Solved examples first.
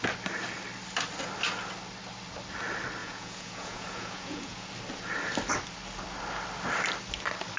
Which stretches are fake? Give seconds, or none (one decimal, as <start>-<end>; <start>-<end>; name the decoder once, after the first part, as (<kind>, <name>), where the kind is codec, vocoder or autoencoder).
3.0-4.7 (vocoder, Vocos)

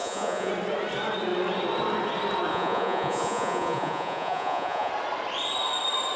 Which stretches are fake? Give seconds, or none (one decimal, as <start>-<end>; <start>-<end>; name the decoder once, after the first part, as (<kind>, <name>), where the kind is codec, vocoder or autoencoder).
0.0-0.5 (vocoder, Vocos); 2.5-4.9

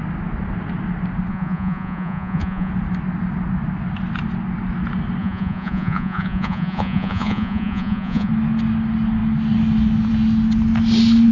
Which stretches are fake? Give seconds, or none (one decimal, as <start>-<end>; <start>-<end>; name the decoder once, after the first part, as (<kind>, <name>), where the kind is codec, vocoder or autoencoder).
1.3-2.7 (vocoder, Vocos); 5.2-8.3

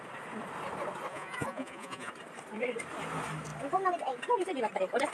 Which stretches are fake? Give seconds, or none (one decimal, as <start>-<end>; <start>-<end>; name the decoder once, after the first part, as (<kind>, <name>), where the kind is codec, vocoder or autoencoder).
1.1-2.1 (vocoder, Vocos)

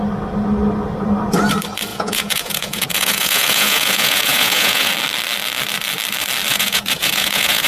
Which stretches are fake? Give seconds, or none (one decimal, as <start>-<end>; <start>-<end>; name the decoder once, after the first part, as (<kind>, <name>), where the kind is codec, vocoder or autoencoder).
1.9-4.9 (vocoder, Vocos); 6.5-7.7

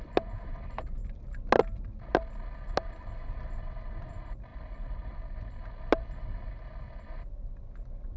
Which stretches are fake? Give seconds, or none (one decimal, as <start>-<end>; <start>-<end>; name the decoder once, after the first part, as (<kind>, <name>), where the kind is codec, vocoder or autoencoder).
none

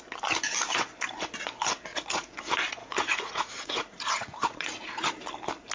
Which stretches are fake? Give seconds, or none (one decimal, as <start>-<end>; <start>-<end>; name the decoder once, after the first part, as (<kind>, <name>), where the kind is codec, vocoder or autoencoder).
1.9-2.4 (vocoder, Vocos); 2.8-4.8